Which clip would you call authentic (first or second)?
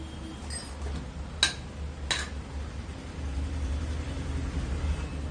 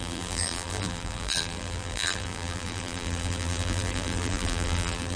first